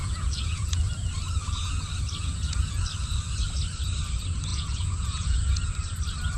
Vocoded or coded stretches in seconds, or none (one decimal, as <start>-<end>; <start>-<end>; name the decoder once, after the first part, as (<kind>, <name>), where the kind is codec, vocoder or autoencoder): 0.0-0.8 (vocoder, Vocos); 2.2-2.8; 4.5-5.7